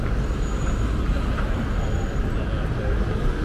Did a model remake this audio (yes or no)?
no